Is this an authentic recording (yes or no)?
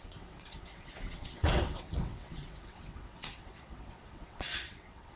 no